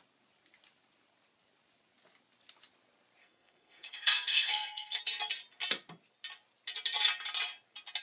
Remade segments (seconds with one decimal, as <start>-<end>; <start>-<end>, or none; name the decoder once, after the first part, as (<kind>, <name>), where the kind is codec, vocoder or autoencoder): 3.2-5.0 (codec, SNAC)